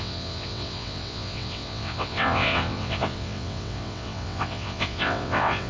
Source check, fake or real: fake